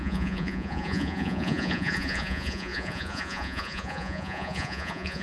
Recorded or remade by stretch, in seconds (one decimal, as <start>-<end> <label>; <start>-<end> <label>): 0.0-5.2 remade